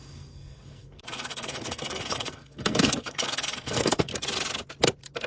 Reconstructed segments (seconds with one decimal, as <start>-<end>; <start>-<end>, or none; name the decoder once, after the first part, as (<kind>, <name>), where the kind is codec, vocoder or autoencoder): 0.0-4.1 (codec, SNAC)